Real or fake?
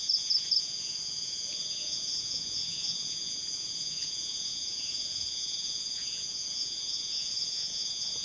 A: fake